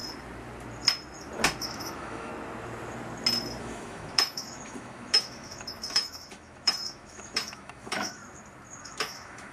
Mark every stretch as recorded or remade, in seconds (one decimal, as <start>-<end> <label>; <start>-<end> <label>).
0.0-1.6 recorded; 1.6-2.3 remade; 2.3-3.6 recorded; 3.6-8.2 remade; 8.2-8.8 recorded; 8.8-9.5 remade